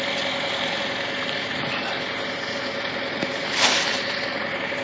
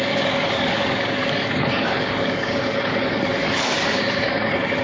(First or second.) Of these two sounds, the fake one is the second